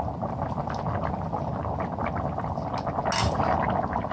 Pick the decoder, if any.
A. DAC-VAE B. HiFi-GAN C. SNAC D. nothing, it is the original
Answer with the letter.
D